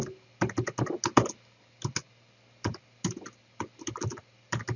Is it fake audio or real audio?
real